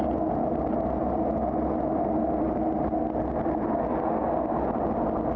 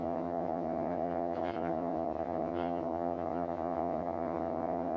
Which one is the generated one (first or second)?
second